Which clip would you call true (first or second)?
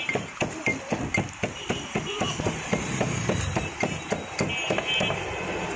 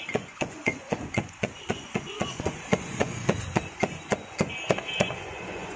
first